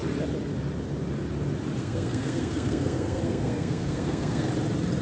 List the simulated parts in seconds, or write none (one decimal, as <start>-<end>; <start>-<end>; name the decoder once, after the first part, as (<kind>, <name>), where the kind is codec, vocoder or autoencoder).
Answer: 1.8-4.5 (codec, SNAC)

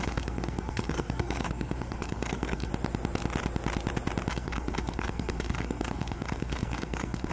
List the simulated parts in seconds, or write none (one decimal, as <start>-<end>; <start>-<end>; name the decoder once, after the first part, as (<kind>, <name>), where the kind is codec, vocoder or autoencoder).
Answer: 0.0-2.7 (codec, SNAC); 4.3-7.3

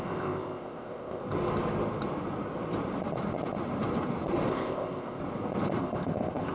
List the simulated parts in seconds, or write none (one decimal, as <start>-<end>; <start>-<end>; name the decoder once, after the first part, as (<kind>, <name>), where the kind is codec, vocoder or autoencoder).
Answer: 0.0-1.2 (codec, ZipCodec); 4.5-5.2; 5.8-6.5

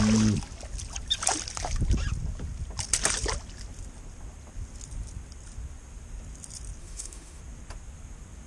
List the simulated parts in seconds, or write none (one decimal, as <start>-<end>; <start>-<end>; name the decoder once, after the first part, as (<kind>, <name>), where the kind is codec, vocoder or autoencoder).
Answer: 6.8-7.4 (autoencoder, DAC-VAE)

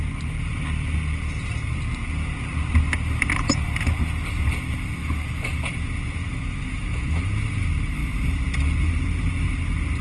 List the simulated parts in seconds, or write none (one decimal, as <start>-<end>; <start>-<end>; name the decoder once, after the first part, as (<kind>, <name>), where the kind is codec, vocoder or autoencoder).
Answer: 5.0-5.6 (autoencoder, DAC-VAE); 6.2-7.3